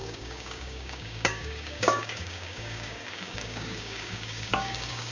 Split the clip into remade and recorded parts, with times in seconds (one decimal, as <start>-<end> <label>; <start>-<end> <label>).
0.0-5.1 remade